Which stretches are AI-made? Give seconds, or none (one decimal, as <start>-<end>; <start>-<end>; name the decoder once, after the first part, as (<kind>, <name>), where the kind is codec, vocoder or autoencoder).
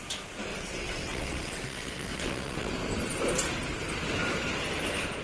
0.5-2.7 (vocoder, WaveNeXt)